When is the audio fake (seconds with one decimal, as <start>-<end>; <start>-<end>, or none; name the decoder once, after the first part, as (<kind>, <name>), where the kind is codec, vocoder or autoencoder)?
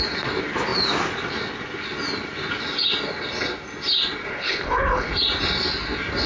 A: 4.3-5.1 (codec, HILCodec)